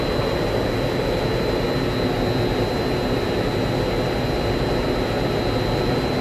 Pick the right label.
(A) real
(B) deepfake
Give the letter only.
A